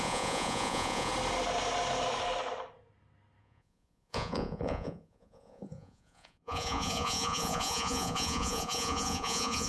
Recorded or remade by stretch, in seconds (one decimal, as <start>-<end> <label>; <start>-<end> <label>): 0.0-1.1 remade; 1.1-3.4 recorded; 3.4-9.7 remade